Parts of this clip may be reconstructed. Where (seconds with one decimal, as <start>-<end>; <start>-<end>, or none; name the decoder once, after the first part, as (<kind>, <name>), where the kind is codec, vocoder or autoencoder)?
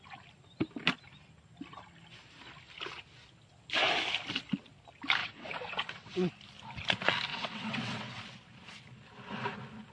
5.2-6.3 (vocoder, WaveNeXt); 7.3-8.2